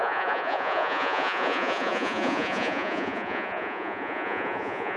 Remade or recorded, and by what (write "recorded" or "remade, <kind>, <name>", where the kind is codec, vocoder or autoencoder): remade, vocoder, Vocos